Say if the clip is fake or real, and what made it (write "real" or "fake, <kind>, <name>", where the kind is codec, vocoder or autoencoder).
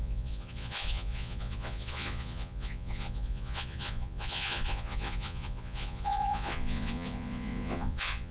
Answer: fake, vocoder, Vocos